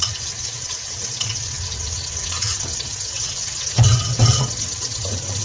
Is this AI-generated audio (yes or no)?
yes